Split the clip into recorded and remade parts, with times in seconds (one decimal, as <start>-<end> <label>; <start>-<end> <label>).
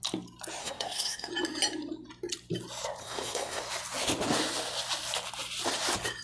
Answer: 0.0-0.6 recorded; 0.6-1.3 remade; 1.3-3.0 recorded; 3.0-3.6 remade; 3.6-6.2 recorded